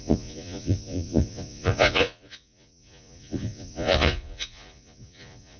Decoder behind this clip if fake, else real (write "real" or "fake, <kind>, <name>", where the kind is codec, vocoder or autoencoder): fake, vocoder, Vocos